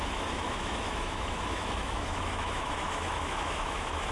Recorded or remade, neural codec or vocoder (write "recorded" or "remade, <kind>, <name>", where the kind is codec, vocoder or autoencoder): remade, autoencoder, DAC-VAE